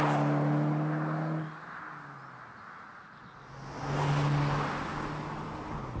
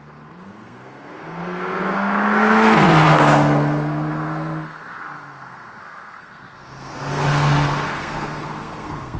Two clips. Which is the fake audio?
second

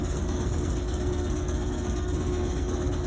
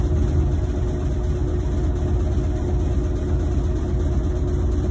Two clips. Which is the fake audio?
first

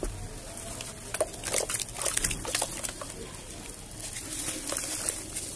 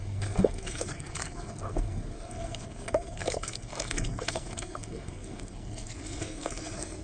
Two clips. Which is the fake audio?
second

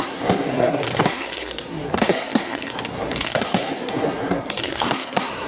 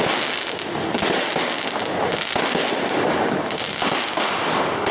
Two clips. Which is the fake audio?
first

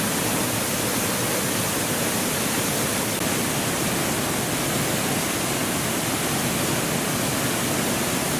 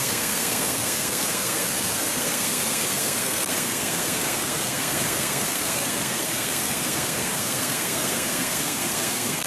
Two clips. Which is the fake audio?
second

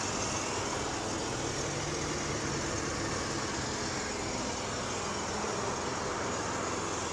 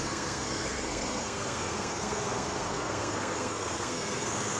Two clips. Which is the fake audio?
second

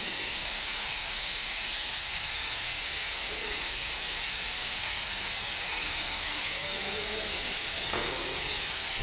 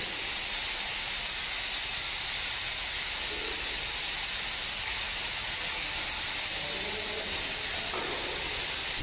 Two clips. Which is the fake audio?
first